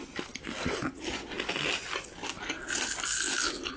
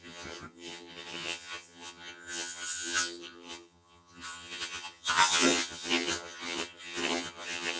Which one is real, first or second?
first